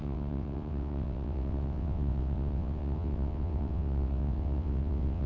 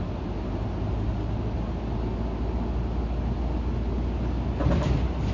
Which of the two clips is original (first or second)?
second